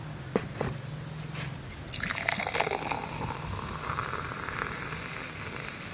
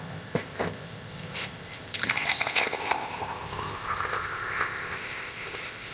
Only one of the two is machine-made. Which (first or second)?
second